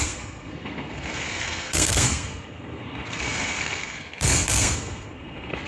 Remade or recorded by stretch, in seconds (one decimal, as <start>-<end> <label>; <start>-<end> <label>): 0.0-5.7 remade